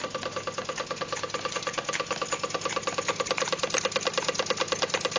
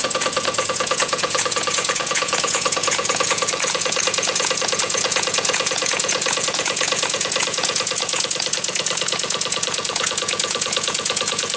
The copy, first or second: second